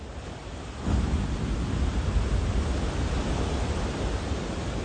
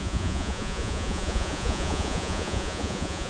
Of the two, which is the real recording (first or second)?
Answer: first